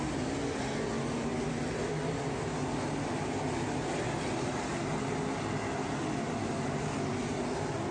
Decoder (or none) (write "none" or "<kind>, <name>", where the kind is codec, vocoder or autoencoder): none